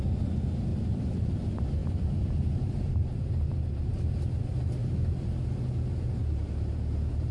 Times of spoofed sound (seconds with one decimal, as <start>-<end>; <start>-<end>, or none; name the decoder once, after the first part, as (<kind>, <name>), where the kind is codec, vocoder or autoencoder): 0.7-1.4 (vocoder, BigVGAN v2); 1.8-3.8; 6.2-7.3